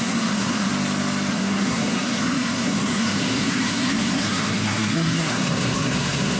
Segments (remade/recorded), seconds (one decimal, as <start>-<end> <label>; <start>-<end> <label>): 0.0-0.7 remade; 0.7-1.3 recorded; 1.3-6.4 remade